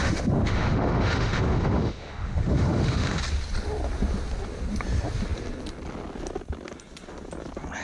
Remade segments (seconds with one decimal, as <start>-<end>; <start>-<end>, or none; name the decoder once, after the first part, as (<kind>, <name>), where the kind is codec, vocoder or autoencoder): 0.0-3.2 (autoencoder, DAC-VAE)